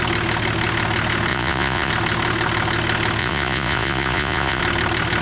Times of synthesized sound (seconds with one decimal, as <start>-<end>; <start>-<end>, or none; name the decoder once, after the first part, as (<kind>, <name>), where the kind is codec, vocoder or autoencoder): 1.3-1.9 (vocoder, Vocos); 3.2-4.6